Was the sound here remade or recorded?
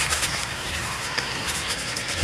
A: remade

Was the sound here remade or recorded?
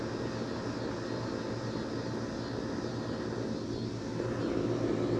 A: recorded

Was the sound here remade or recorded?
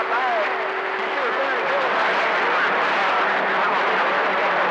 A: recorded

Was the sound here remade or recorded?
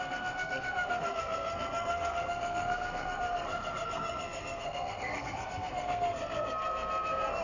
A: remade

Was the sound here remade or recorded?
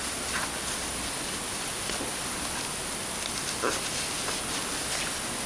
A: recorded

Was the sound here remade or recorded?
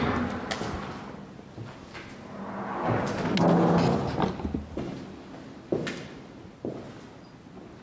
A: recorded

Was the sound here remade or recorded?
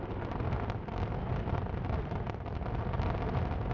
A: recorded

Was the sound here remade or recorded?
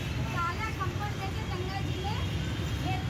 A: recorded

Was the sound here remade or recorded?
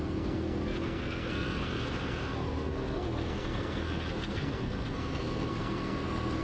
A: remade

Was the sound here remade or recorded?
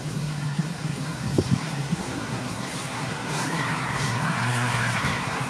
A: remade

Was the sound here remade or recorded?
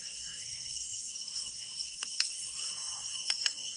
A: remade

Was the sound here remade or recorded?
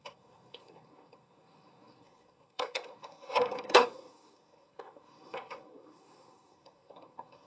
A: remade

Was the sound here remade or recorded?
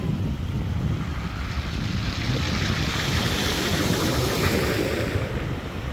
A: recorded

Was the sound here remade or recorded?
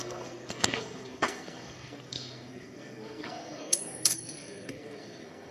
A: remade